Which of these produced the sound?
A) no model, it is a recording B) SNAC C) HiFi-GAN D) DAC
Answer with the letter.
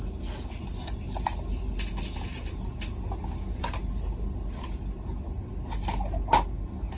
A